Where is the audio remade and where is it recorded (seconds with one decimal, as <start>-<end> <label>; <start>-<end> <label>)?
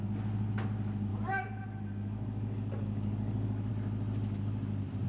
0.0-1.1 recorded; 1.1-3.7 remade; 3.7-5.1 recorded